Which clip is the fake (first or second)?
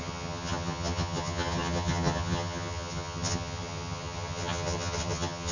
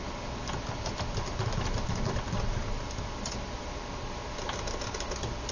first